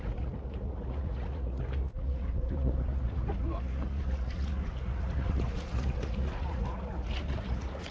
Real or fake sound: fake